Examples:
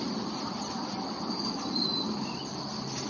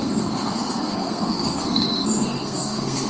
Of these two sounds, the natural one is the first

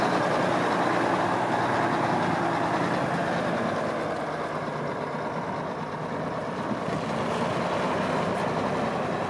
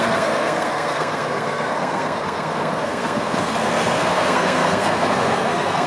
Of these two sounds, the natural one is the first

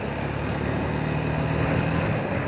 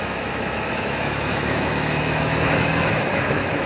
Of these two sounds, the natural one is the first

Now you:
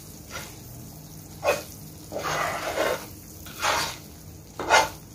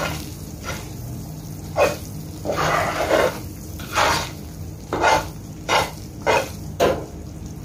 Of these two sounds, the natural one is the first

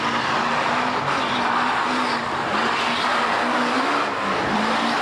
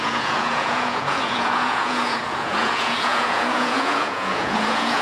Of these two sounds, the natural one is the first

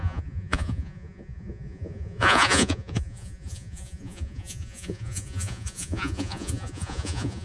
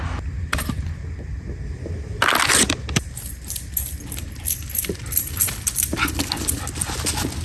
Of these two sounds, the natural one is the second